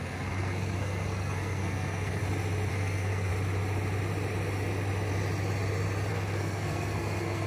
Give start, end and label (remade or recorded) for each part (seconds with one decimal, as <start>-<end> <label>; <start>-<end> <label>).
0.0-2.2 remade; 2.2-2.7 recorded; 2.7-3.3 remade; 3.3-6.1 recorded; 6.1-7.5 remade